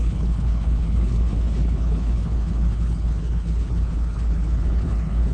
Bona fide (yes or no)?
no